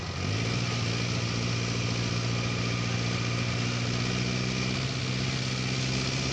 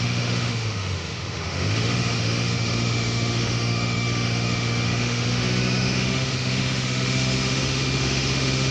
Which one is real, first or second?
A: first